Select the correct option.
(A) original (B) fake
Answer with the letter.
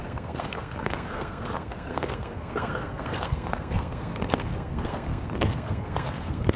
B